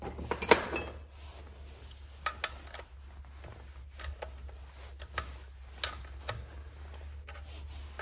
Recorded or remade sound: recorded